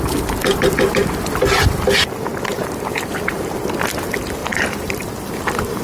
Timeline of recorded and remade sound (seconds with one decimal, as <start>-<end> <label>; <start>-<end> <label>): 0.0-2.5 recorded; 2.5-3.5 remade; 3.5-4.4 recorded; 4.4-5.8 remade